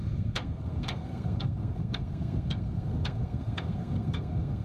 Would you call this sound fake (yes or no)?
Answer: yes